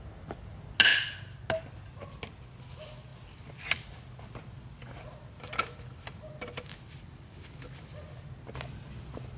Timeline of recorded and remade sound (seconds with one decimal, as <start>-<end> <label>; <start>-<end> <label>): 0.0-9.4 recorded